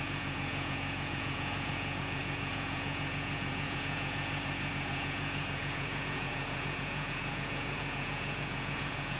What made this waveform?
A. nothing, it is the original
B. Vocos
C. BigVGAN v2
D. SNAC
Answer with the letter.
B